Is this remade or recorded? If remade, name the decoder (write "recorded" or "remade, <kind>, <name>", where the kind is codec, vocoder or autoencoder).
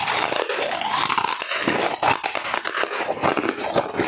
remade, vocoder, BigVGAN v2